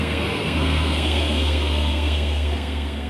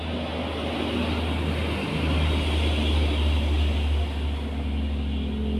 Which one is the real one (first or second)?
second